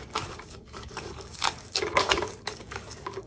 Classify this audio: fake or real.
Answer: fake